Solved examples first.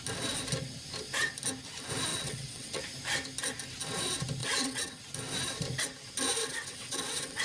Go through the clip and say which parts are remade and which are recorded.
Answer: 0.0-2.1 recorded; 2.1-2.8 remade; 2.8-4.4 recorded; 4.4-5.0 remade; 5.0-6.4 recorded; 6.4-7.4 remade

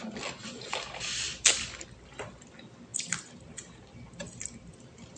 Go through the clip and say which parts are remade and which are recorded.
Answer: 0.0-1.3 recorded; 1.3-2.4 remade; 2.4-2.9 recorded; 2.9-5.2 remade